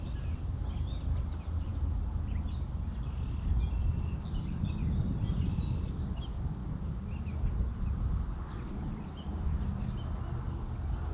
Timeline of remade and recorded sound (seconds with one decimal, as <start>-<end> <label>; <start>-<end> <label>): 0.0-11.1 recorded